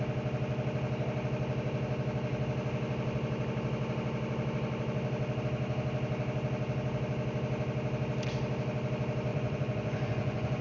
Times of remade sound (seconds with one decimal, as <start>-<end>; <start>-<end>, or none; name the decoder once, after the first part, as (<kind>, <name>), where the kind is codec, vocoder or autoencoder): 9.3-10.6 (vocoder, Vocos)